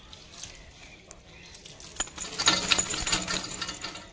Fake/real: real